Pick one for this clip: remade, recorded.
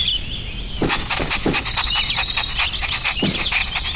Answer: recorded